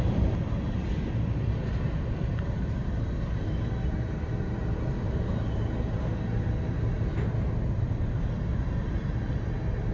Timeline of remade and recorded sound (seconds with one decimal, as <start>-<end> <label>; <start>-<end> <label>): 0.0-9.9 recorded

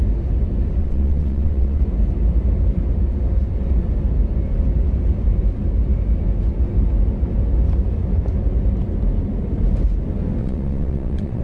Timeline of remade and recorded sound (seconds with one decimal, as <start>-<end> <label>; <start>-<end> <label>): 0.0-0.8 recorded; 0.8-1.8 remade; 1.8-10.4 recorded; 10.4-11.4 remade

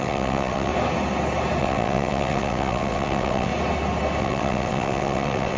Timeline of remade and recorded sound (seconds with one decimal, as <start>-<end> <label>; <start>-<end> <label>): 0.0-0.7 remade; 0.7-1.6 recorded; 1.6-3.5 remade; 3.5-4.2 recorded; 4.2-5.6 remade

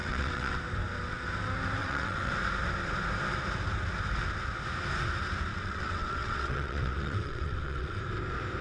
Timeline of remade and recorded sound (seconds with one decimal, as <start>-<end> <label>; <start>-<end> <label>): 0.0-0.6 remade; 0.6-1.8 recorded; 1.8-2.3 remade; 2.3-5.5 recorded; 5.5-8.0 remade; 8.0-8.6 recorded

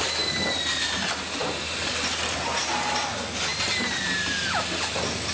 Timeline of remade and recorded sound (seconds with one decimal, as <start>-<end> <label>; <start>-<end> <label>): 0.0-5.3 recorded

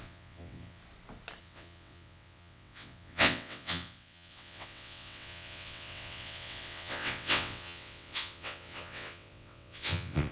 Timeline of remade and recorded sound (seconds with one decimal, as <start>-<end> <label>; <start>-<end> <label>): 0.0-0.8 remade; 0.8-1.4 recorded; 1.4-10.3 remade

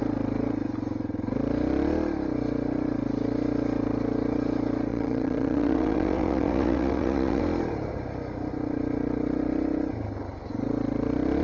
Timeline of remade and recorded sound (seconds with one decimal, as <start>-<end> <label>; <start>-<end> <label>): 0.0-4.9 recorded; 4.9-7.4 remade; 7.4-11.4 recorded

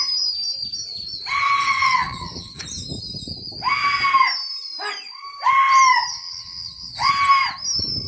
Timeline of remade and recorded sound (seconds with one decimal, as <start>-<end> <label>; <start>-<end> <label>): 0.0-1.6 recorded; 1.6-2.6 remade; 2.6-6.1 recorded; 6.1-7.1 remade; 7.1-8.1 recorded